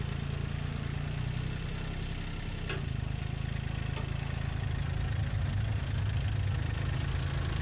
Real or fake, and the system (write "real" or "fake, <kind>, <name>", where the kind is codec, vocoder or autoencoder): real